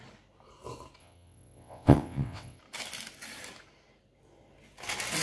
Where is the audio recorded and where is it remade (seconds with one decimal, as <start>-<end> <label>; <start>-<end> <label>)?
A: 0.0-1.0 recorded; 1.0-2.6 remade; 2.6-5.2 recorded